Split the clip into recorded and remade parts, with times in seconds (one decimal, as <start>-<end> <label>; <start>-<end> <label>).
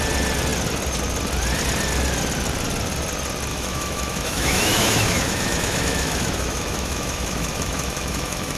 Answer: 0.0-3.5 recorded; 3.5-8.6 remade